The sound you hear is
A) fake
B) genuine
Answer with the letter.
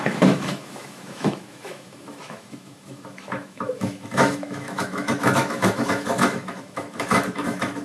A